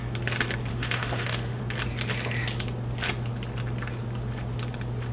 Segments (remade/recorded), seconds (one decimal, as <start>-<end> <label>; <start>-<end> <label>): 0.0-0.7 recorded; 0.7-1.6 remade; 1.6-5.1 recorded